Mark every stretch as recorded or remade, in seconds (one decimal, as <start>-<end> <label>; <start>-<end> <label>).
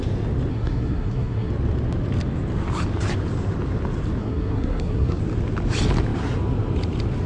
0.0-0.5 recorded; 0.5-1.5 remade; 1.5-4.2 recorded; 4.2-5.2 remade; 5.2-7.3 recorded